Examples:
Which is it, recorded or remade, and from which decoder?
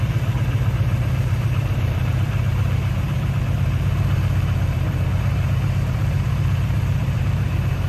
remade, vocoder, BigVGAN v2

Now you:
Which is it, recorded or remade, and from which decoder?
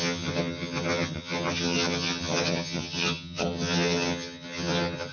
remade, vocoder, HiFi-GAN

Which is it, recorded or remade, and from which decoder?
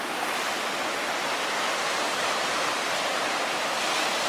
recorded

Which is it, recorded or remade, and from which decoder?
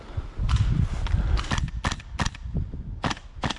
recorded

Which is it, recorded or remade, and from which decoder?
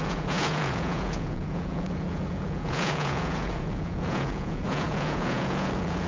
remade, vocoder, Vocos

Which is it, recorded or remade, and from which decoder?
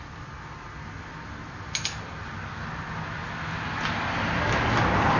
recorded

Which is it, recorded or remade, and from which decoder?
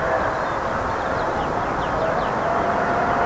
recorded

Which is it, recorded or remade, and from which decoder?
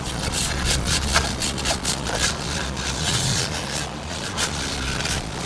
remade, vocoder, Vocos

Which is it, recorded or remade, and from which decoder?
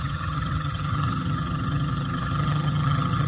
remade, vocoder, HiFi-GAN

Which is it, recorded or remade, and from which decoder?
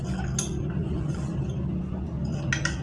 recorded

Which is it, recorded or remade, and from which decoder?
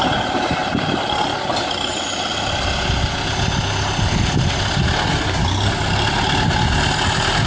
recorded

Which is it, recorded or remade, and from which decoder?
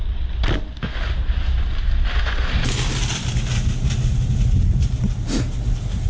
recorded